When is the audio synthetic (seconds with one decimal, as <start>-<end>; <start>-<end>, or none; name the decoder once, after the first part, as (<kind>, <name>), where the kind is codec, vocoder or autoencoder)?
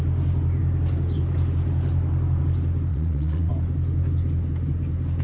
2.9-3.5 (vocoder, Vocos)